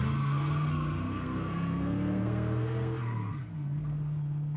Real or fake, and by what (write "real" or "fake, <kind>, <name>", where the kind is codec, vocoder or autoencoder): fake, codec, SNAC